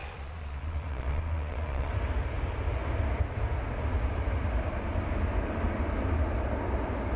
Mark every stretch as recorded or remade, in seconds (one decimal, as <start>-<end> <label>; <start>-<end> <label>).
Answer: 0.0-1.9 remade; 1.9-7.2 recorded

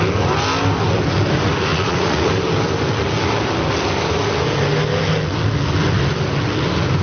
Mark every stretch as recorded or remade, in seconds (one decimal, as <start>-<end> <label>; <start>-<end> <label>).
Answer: 0.0-1.7 recorded; 1.7-2.3 remade; 2.3-7.0 recorded

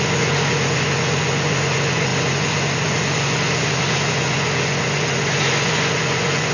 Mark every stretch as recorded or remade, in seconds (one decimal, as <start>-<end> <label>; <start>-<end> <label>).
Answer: 0.0-6.5 remade

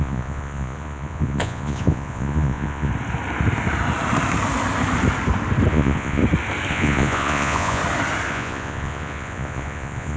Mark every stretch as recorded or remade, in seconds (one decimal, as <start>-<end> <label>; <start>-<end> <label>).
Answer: 0.0-2.9 remade; 2.9-5.7 recorded; 5.7-6.2 remade; 6.2-6.7 recorded; 6.7-7.8 remade; 7.8-8.3 recorded; 8.3-10.2 remade

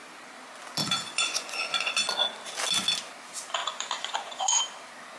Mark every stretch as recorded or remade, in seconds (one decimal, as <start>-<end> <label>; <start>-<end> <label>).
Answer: 0.0-0.8 recorded; 0.8-1.9 remade; 1.9-3.6 recorded; 3.6-4.6 remade; 4.6-5.2 recorded